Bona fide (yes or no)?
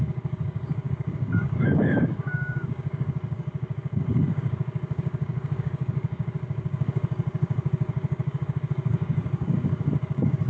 no